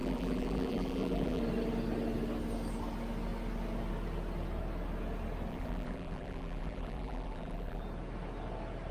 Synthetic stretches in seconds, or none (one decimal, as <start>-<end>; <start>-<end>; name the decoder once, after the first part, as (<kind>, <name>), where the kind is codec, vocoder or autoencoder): 0.0-1.4 (vocoder, BigVGAN v2); 5.5-7.8